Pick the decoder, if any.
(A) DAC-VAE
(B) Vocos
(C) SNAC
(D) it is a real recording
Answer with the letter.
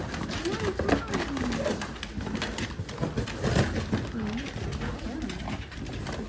D